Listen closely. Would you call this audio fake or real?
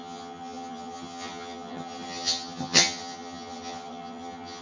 fake